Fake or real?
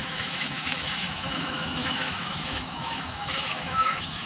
fake